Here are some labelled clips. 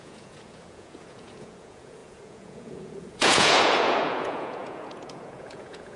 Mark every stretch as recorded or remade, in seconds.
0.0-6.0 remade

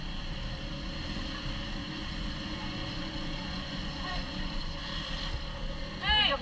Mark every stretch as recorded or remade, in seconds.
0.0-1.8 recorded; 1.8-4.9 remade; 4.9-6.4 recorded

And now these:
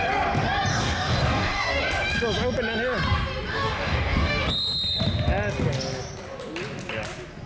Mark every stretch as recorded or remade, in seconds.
0.0-0.7 recorded; 0.7-1.8 remade; 1.8-3.5 recorded; 3.5-4.4 remade; 4.4-7.5 recorded

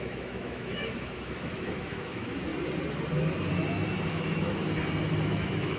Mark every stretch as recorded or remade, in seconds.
0.0-2.5 remade; 2.5-4.1 recorded; 4.1-4.6 remade; 4.6-5.2 recorded; 5.2-5.8 remade